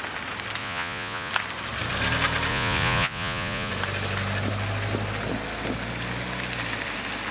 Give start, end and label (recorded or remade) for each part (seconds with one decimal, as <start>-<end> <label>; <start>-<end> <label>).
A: 0.0-0.6 recorded; 0.6-1.3 remade; 1.3-2.5 recorded; 2.5-3.7 remade; 3.7-7.3 recorded